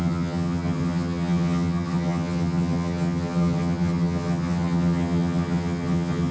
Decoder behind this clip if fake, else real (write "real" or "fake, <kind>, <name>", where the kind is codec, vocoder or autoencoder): fake, vocoder, HiFi-GAN